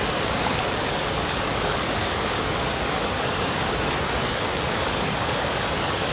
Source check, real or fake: fake